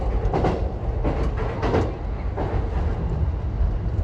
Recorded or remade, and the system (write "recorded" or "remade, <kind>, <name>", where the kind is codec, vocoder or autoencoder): recorded